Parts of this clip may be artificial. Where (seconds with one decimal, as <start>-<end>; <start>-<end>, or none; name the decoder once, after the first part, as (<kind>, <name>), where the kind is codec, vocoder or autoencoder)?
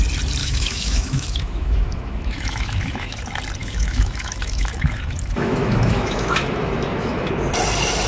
0.4-3.2 (autoencoder, DAC-VAE); 3.6-7.3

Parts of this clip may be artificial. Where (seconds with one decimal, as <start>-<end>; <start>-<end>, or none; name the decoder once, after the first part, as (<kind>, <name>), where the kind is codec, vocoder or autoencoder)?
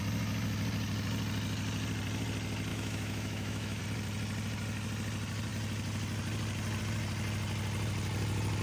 2.7-3.8 (autoencoder, DAC-VAE)